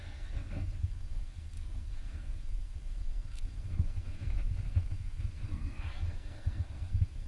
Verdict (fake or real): fake